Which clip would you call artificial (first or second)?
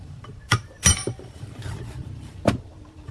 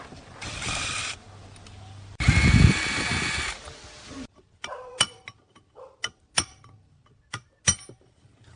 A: first